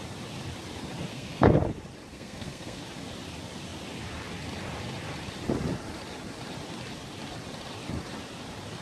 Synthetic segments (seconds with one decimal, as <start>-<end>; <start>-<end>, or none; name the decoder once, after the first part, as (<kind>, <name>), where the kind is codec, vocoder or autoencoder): 1.1-1.6 (codec, SNAC); 2.1-2.8